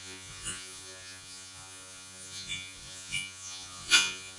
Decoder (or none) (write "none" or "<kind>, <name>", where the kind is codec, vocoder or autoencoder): vocoder, Vocos